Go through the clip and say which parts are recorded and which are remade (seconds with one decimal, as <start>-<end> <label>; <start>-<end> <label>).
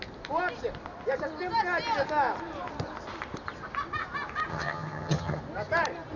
0.0-4.5 recorded; 4.5-5.4 remade; 5.4-6.2 recorded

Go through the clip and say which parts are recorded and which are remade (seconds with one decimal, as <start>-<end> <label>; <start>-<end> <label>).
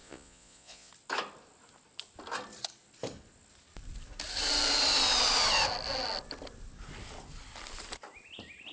0.0-0.9 remade; 0.9-8.7 recorded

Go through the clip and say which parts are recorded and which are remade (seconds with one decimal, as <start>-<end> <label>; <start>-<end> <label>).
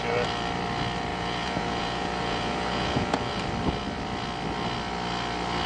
0.0-1.1 recorded; 1.1-3.4 remade; 3.4-5.7 recorded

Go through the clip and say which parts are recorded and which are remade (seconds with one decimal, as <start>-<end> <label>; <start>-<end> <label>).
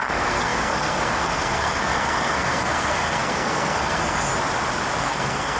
0.0-4.3 remade; 4.3-5.0 recorded; 5.0-5.6 remade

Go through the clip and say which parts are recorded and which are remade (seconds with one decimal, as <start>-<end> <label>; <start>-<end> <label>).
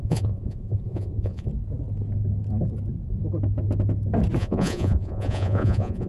0.0-1.5 remade; 1.5-4.4 recorded; 4.4-6.1 remade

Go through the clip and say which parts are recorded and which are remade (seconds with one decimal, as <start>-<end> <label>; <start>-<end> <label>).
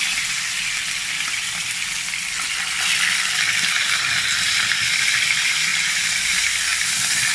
0.0-7.3 recorded